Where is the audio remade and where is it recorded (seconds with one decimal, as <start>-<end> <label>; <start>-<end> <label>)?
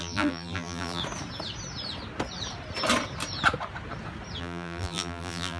0.0-1.0 remade; 1.0-4.4 recorded; 4.4-5.6 remade